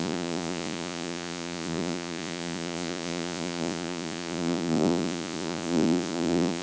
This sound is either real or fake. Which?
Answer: fake